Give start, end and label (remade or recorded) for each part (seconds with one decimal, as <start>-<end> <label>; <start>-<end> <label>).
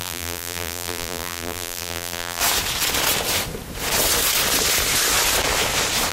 0.0-2.4 remade; 2.4-6.1 recorded